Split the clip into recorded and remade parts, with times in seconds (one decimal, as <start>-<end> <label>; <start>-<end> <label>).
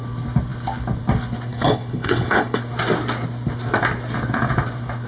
0.0-1.5 recorded; 1.5-2.6 remade; 2.6-5.1 recorded